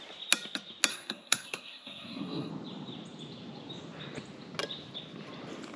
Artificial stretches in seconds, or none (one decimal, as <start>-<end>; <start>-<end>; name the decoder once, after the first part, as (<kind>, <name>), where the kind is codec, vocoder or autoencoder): 0.9-2.5 (codec, SNAC)